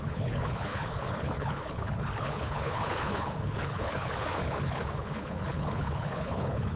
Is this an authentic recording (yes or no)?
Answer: no